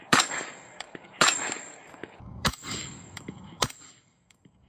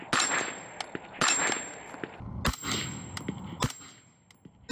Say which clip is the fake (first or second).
first